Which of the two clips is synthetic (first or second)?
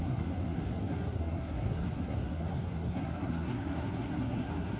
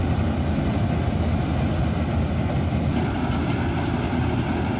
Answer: first